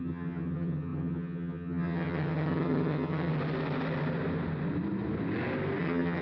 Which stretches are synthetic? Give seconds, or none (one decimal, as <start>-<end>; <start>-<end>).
0.0-3.3; 5.8-6.2